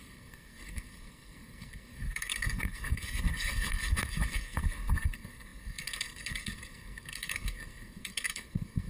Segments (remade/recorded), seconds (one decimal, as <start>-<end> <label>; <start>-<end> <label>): 0.0-8.9 remade